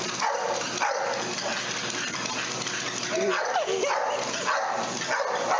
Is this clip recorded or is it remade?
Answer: recorded